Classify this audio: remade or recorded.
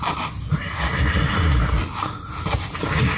recorded